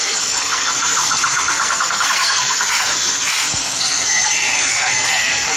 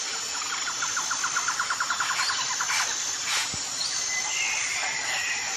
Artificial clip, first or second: first